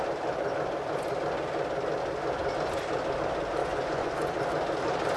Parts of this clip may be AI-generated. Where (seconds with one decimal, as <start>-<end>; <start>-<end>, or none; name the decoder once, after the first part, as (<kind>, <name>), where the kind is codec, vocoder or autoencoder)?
3.6-4.1 (vocoder, Vocos)